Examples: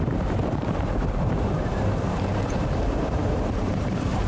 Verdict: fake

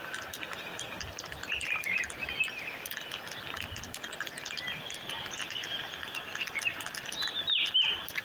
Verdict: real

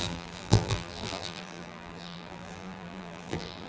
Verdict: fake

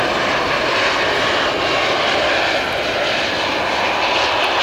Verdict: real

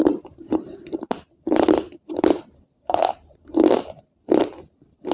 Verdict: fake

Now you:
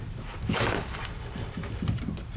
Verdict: fake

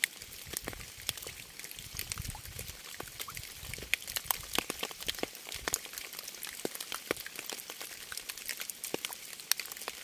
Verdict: real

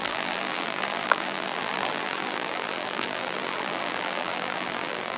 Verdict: fake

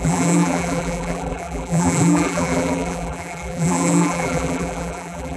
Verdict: fake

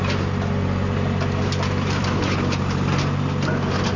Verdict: real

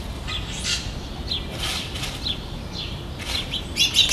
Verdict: real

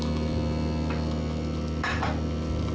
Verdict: real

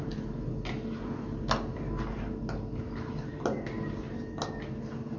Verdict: real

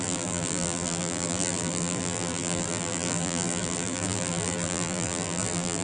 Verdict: fake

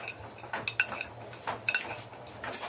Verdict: real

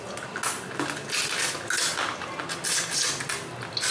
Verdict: real